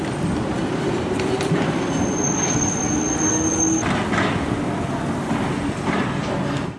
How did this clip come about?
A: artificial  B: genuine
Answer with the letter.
B